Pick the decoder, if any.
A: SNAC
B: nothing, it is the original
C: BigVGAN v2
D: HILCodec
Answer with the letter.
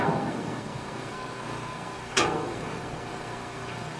A